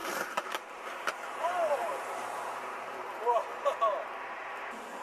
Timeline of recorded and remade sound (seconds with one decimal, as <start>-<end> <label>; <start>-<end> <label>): 0.0-3.5 remade; 3.5-4.5 recorded; 4.5-5.0 remade